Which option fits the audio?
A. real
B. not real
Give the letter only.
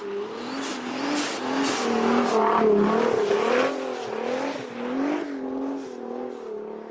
A